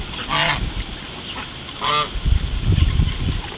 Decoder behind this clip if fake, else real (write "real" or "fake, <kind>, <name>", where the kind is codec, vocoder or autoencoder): real